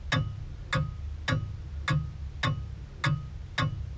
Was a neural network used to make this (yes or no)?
no